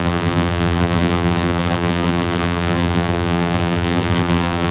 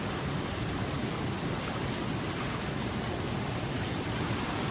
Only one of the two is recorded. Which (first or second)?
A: second